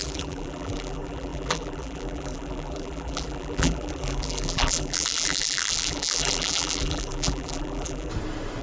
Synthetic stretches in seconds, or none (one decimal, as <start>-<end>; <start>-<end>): 0.0-8.1